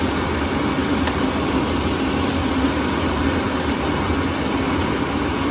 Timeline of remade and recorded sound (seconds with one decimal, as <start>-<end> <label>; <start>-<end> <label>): 0.0-2.7 recorded; 2.7-4.1 remade; 4.1-5.5 recorded